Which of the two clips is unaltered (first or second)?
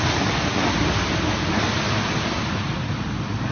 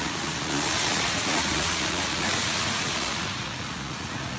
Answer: first